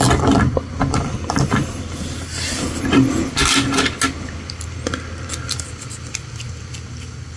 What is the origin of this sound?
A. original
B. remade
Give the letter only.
A